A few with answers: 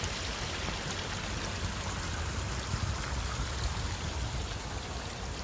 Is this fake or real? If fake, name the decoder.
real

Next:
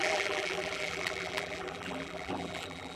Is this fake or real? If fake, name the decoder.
fake, vocoder, BigVGAN v2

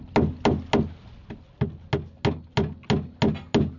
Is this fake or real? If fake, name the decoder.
real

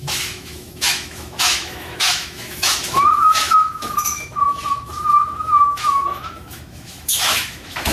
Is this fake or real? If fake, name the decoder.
fake, autoencoder, DAC-VAE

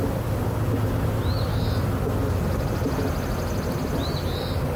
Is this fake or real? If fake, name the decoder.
real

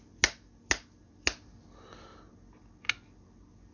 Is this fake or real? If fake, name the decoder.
real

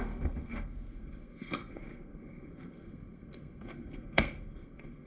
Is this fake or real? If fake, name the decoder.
fake, codec, SNAC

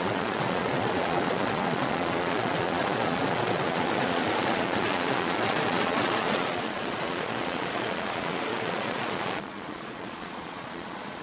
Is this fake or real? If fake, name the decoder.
fake, vocoder, Vocos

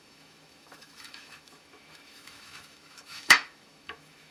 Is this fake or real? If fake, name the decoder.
fake, autoencoder, DAC-VAE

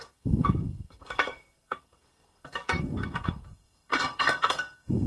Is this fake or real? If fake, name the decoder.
fake, codec, SNAC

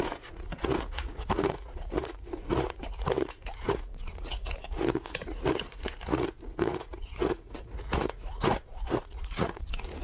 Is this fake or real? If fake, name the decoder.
fake, vocoder, Vocos